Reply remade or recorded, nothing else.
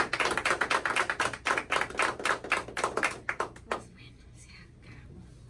recorded